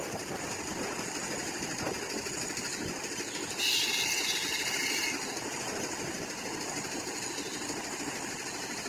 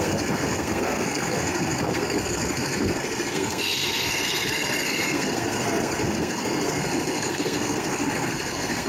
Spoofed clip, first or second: second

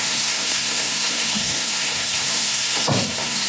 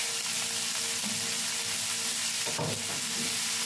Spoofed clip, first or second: first